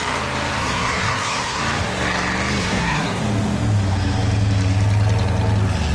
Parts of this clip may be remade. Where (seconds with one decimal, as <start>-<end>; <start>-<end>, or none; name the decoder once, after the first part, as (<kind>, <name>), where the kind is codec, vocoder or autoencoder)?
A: 0.6-1.6 (codec, SNAC); 2.6-3.2